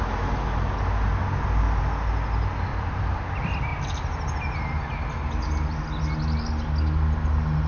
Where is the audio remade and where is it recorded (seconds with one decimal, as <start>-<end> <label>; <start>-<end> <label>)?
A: 0.0-2.7 recorded; 2.7-3.3 remade; 3.3-7.7 recorded